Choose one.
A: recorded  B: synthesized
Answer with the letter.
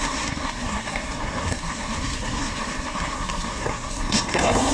B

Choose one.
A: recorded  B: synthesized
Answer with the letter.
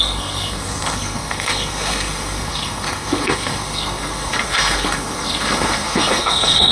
B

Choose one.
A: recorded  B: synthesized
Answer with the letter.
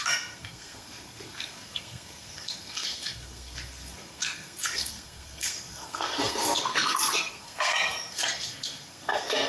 B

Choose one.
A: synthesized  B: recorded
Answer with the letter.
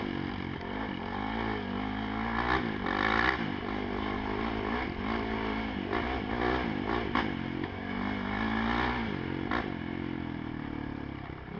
B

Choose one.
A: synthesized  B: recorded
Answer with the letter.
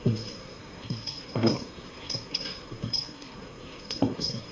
A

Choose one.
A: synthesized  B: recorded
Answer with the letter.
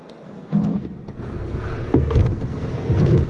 A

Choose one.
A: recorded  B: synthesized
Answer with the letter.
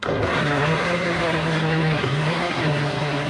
B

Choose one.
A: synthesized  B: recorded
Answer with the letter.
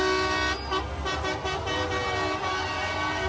B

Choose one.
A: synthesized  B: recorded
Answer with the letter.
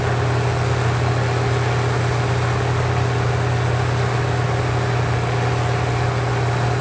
B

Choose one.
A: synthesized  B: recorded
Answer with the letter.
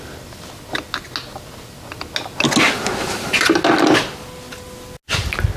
B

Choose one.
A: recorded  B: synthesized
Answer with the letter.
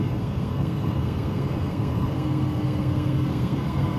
B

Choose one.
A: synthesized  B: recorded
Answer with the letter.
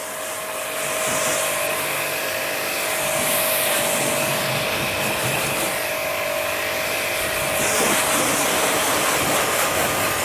B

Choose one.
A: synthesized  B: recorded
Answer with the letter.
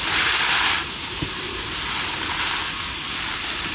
B